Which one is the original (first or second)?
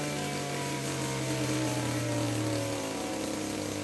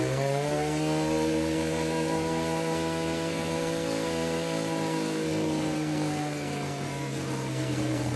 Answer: first